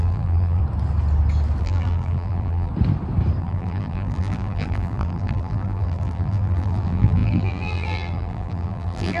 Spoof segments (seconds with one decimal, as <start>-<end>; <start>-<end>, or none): 0.0-0.6; 1.6-2.7; 3.4-9.2